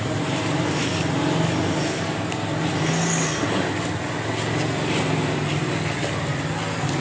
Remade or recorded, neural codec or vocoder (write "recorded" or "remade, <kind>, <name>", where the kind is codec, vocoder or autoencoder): recorded